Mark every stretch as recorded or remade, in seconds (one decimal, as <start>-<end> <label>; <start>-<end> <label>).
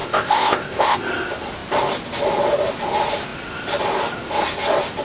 0.0-1.0 remade; 1.0-5.0 recorded